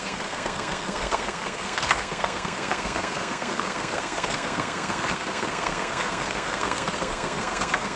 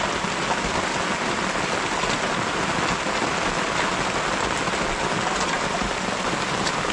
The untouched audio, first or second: second